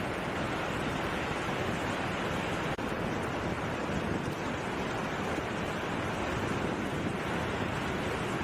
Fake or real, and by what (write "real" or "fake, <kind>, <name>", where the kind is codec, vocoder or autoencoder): real